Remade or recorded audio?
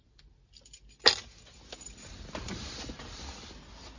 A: recorded